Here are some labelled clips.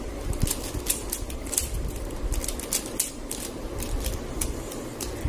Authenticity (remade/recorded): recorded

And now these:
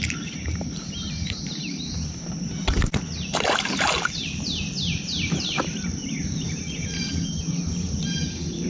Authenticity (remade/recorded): remade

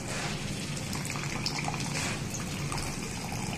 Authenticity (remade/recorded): recorded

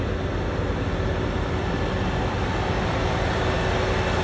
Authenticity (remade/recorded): recorded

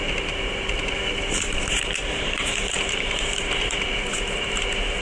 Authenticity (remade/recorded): remade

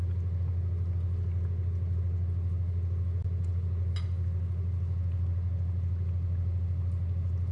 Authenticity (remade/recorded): recorded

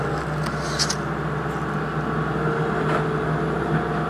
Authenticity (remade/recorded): recorded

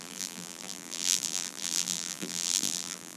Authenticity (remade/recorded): remade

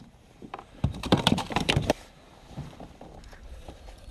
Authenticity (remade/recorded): remade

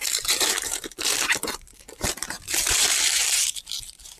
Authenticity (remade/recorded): remade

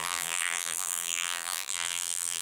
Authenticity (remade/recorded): remade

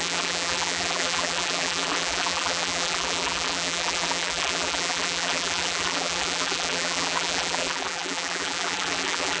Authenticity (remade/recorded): remade